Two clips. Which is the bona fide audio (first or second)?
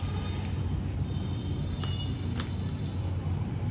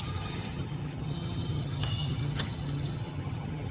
first